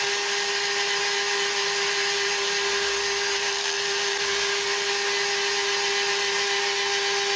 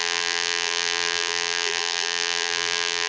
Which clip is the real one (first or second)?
first